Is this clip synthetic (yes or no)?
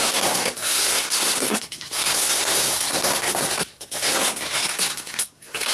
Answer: yes